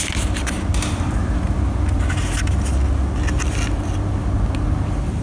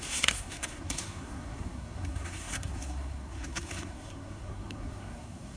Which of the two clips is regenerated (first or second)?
second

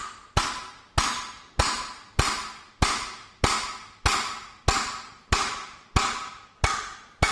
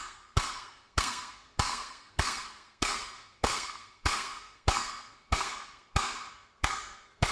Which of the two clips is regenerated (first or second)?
second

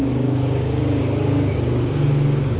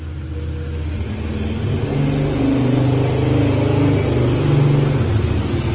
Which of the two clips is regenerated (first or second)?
first